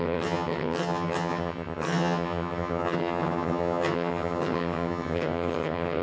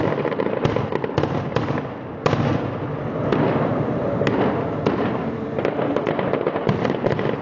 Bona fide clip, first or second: second